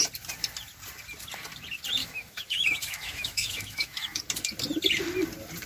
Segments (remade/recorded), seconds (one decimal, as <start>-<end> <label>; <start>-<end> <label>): 0.0-2.0 recorded; 2.0-4.2 remade; 4.2-5.7 recorded